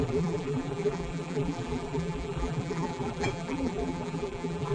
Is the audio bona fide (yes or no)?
no